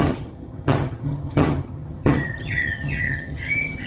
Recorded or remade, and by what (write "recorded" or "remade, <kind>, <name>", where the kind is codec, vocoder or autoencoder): remade, vocoder, HiFi-GAN